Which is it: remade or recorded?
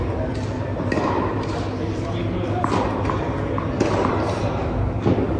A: remade